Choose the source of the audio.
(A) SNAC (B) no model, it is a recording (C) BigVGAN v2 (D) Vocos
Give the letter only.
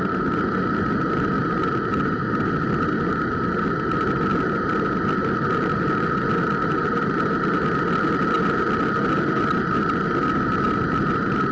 B